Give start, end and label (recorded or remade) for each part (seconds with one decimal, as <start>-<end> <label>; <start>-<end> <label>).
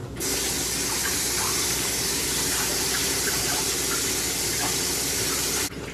0.0-5.9 recorded